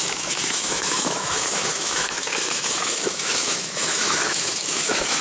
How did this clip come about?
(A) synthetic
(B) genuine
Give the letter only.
A